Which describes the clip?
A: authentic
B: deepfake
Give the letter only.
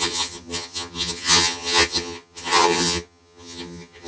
B